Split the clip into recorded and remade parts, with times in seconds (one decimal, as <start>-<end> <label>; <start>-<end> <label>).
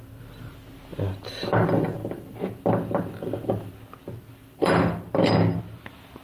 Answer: 0.0-0.9 recorded; 0.9-3.7 remade; 3.7-4.4 recorded; 4.4-5.6 remade; 5.6-6.2 recorded